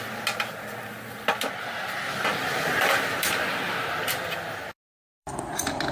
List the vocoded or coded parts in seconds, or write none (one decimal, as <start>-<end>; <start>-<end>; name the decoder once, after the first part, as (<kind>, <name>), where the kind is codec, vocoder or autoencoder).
2.3-5.9 (vocoder, BigVGAN v2)